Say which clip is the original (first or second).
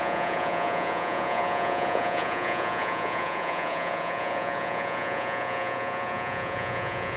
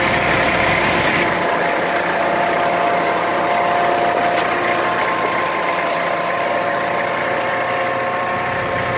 second